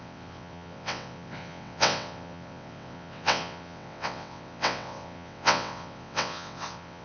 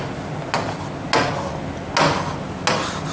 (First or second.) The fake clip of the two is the first